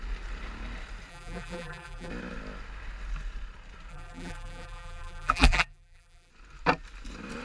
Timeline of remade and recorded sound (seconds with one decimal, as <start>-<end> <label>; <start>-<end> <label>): 0.0-1.1 recorded; 1.1-2.1 remade; 2.1-3.9 recorded; 3.9-6.3 remade; 6.3-7.4 recorded